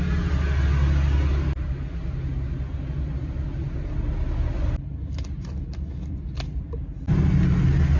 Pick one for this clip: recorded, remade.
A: recorded